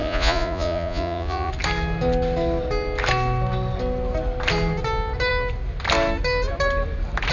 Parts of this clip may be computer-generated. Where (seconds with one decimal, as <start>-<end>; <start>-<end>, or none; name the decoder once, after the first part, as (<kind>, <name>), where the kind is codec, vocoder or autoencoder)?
0.0-1.5 (vocoder, Vocos)